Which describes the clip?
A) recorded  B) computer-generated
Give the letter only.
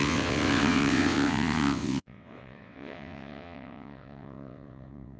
B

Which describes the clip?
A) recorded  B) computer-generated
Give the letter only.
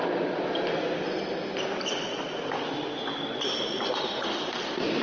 A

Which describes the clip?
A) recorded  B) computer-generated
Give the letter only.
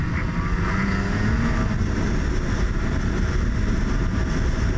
A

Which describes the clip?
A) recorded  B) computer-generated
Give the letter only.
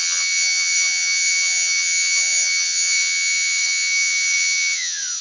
B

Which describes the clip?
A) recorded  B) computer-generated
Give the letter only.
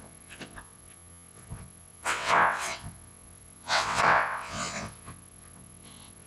B